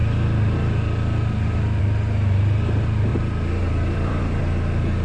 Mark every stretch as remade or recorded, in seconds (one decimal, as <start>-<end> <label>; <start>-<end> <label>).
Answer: 0.0-3.1 recorded; 3.1-4.4 remade; 4.4-5.0 recorded